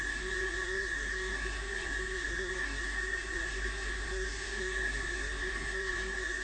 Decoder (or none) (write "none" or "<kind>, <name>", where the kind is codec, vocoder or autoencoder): codec, SNAC